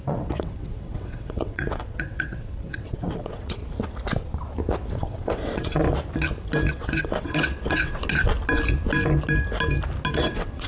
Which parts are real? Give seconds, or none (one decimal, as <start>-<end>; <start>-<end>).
3.6-4.9; 5.8-6.7; 8.0-10.1